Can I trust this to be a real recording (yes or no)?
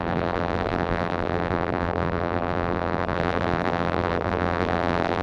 no